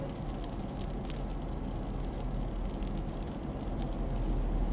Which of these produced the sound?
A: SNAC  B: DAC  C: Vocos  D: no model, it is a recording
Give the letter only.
D